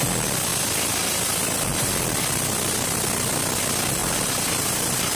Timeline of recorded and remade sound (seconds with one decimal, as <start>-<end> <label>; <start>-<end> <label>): 0.0-4.0 recorded; 4.0-5.1 remade